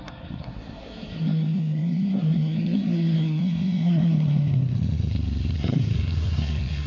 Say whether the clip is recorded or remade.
remade